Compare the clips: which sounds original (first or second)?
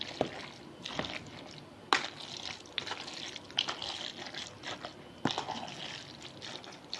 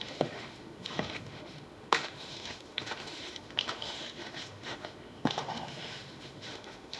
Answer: first